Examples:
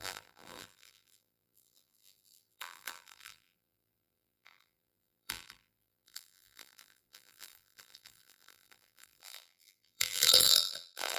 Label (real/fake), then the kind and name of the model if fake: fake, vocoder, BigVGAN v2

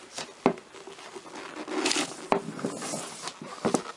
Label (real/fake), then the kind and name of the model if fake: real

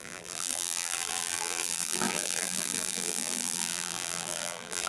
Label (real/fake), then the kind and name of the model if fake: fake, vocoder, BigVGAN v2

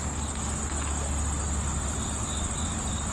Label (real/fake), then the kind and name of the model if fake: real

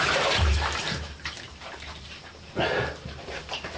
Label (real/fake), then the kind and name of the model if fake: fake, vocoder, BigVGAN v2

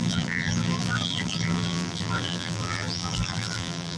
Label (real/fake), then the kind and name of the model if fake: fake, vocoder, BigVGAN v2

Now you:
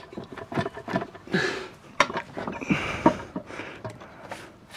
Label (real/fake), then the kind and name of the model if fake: fake, vocoder, BigVGAN v2